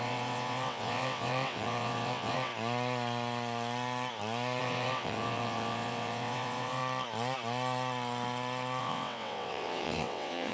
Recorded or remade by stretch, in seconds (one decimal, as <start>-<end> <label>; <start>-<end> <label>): 0.0-2.5 remade; 2.5-4.6 recorded; 4.6-6.8 remade; 6.8-8.8 recorded; 8.8-10.5 remade